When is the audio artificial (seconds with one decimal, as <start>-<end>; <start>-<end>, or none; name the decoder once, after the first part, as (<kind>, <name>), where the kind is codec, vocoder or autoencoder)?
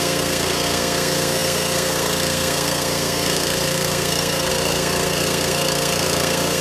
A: 0.0-6.6 (codec, SNAC)